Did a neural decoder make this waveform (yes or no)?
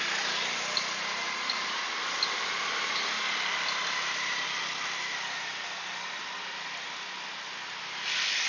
no